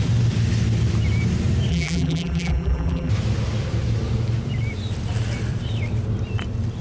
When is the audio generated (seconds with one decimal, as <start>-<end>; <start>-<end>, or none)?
1.7-3.1

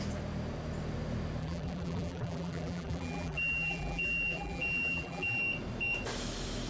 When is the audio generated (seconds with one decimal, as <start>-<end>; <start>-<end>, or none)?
1.4-5.4

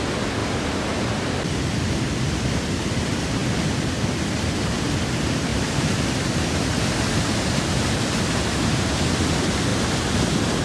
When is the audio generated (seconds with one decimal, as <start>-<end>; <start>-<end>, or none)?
0.4-1.1; 5.5-8.9

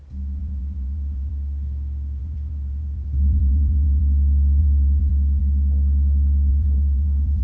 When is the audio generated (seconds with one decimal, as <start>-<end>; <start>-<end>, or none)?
0.4-1.3; 2.2-4.0; 4.6-5.4; 6.5-7.4

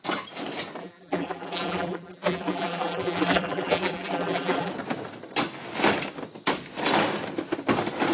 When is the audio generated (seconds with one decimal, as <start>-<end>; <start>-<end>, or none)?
0.8-4.7

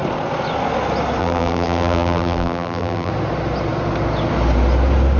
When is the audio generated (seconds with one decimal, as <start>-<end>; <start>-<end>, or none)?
1.2-3.1